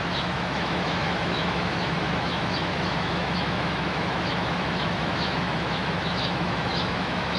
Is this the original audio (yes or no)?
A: no